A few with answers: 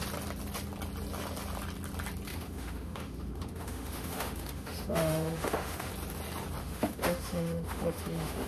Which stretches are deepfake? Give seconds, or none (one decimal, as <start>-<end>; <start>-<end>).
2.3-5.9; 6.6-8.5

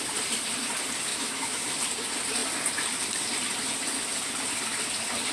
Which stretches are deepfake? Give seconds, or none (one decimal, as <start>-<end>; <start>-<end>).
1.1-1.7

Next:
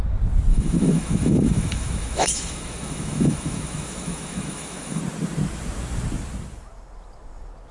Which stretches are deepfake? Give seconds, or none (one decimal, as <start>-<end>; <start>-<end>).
0.5-5.0

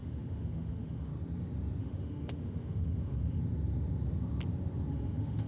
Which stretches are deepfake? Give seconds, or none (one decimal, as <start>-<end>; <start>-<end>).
0.0-1.1; 1.8-3.4; 4.9-5.5